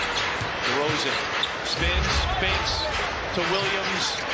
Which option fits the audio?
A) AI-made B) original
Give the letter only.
B